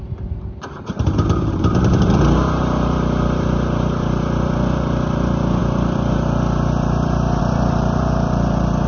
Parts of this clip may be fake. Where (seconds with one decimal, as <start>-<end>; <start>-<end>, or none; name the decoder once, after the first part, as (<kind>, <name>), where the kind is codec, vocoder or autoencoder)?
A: 0.0-8.9 (vocoder, BigVGAN v2)